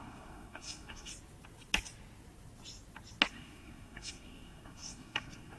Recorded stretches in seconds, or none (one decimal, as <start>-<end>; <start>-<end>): 1.1-3.3